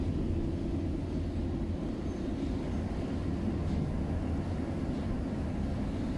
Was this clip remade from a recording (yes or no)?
no